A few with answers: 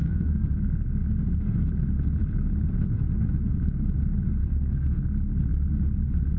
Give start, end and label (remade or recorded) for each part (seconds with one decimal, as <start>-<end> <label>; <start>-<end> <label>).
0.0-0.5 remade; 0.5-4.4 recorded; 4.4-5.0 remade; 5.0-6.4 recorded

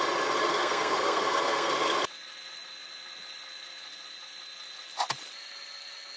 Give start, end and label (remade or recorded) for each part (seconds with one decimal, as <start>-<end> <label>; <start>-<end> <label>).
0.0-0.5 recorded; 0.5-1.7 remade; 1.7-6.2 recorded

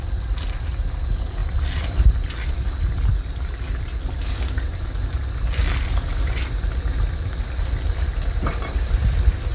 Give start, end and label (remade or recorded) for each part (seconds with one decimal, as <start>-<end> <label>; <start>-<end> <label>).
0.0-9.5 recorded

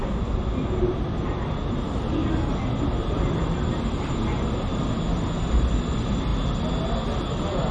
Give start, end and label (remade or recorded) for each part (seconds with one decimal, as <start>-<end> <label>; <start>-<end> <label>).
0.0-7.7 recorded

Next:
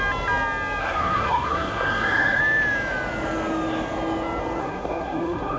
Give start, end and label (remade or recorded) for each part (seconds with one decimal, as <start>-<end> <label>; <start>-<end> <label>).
0.0-0.8 recorded; 0.8-2.4 remade; 2.4-4.6 recorded; 4.6-5.6 remade